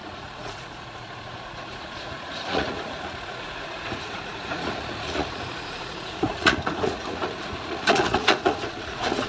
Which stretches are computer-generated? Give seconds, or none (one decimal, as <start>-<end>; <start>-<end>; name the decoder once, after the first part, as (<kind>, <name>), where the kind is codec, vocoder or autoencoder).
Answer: 0.0-9.3 (vocoder, Vocos)